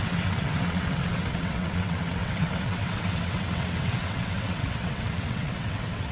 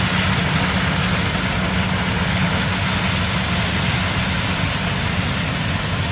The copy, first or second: first